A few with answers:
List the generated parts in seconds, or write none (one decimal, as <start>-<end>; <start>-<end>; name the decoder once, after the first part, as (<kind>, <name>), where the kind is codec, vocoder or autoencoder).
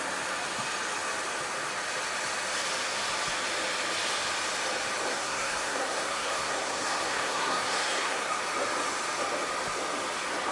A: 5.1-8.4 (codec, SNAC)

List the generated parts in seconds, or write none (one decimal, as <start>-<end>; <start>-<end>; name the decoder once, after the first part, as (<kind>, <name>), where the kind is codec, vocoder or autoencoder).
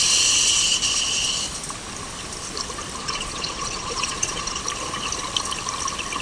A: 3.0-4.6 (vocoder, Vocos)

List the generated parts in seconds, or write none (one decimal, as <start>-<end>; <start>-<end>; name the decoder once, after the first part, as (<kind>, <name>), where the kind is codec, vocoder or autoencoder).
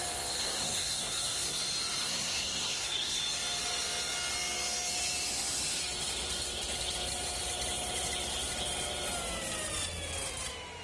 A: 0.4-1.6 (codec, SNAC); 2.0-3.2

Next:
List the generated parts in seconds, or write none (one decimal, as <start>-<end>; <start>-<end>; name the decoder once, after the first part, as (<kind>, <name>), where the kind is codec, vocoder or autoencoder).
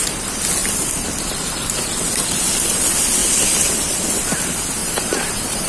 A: 4.8-5.7 (vocoder, BigVGAN v2)